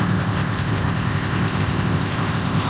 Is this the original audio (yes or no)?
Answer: no